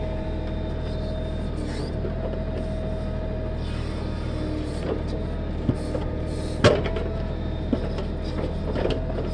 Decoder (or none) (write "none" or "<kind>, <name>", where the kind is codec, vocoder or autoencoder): none